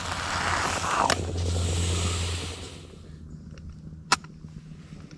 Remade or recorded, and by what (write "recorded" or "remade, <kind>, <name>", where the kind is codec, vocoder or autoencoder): recorded